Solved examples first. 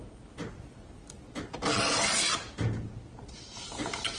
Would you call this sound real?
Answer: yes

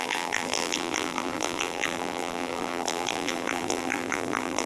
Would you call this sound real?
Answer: no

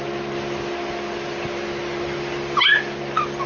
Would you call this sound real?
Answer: yes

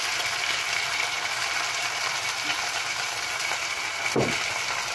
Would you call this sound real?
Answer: yes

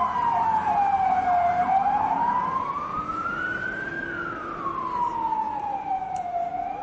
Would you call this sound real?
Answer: yes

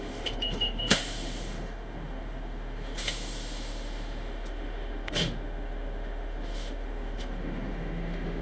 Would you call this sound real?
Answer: no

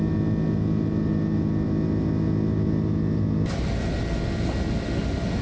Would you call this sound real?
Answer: yes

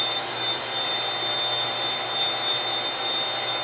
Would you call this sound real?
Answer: yes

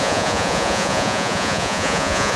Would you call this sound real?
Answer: no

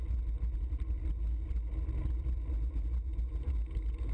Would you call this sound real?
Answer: yes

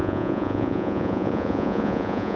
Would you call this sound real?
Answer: no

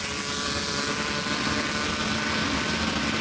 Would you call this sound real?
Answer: yes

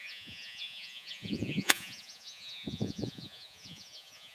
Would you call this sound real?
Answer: no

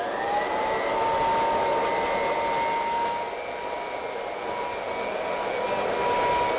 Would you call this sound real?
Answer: yes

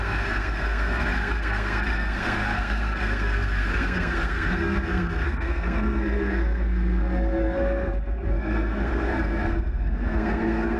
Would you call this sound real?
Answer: no